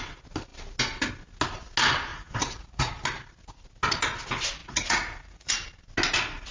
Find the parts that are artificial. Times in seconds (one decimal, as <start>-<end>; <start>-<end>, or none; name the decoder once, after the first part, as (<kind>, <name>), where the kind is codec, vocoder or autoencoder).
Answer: 2.1-2.9 (vocoder, Vocos); 4.6-5.5